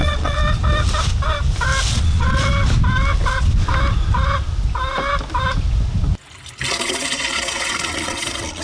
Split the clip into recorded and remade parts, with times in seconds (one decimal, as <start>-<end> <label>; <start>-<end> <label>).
0.0-0.4 remade; 0.4-1.9 recorded; 1.9-2.5 remade; 2.5-6.7 recorded; 6.7-8.6 remade